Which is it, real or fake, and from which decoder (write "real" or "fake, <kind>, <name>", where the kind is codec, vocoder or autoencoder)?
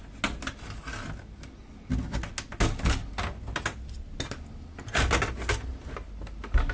real